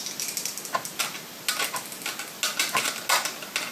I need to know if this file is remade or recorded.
recorded